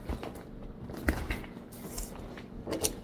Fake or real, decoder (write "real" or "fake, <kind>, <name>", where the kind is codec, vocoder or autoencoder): real